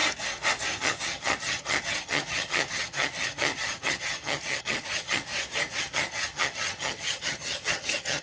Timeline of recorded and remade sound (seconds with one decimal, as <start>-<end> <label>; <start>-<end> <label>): 0.0-0.8 recorded; 0.8-5.3 remade; 5.3-5.8 recorded; 5.8-8.2 remade